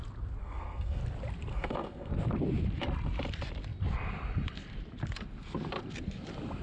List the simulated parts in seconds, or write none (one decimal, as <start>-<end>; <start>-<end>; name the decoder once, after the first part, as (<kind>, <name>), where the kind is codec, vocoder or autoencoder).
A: 0.4-1.0 (codec, SNAC); 1.5-2.1